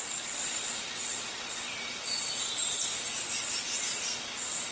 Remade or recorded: recorded